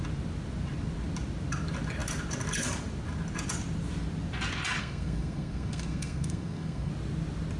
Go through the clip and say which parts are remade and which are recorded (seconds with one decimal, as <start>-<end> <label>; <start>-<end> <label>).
0.0-4.8 recorded; 4.8-6.9 remade; 6.9-7.6 recorded